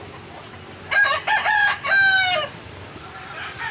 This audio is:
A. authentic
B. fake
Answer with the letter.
A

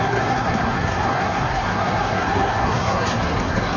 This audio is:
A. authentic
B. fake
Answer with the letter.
B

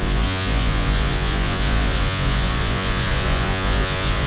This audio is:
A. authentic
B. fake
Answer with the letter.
B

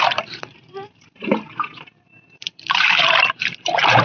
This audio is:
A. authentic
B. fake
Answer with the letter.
B